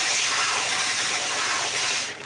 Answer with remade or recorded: remade